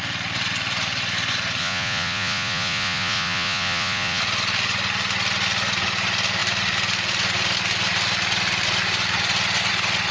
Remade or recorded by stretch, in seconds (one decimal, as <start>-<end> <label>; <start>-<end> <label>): 0.0-1.6 recorded; 1.6-4.2 remade; 4.2-10.1 recorded